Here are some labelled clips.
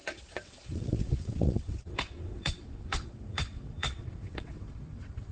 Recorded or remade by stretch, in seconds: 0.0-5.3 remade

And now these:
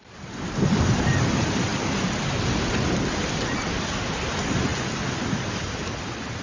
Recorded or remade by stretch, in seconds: 0.0-6.4 recorded